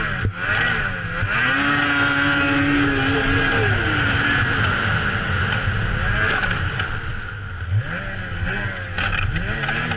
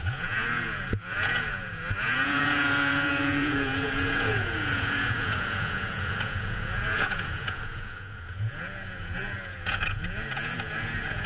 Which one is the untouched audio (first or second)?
first